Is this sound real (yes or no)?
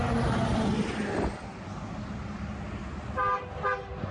yes